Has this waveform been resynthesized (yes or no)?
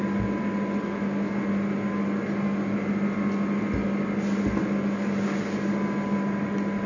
no